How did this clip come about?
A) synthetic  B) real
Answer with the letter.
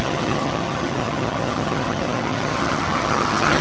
A